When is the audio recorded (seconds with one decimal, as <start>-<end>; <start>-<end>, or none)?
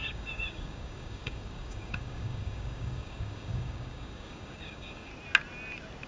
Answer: 5.1-6.1